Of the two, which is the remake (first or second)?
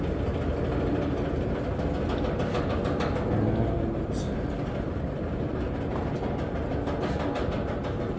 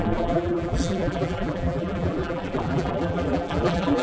second